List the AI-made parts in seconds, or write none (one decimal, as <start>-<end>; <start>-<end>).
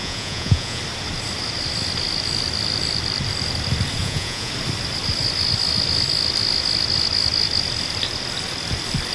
0.0-0.8; 4.0-4.5